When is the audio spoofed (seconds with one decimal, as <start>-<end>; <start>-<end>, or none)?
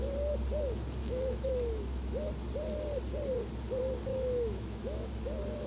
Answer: 1.0-2.3; 4.1-5.1